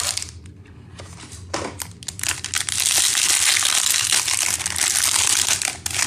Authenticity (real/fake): real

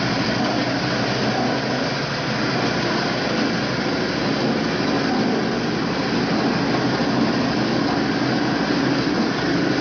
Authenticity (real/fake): real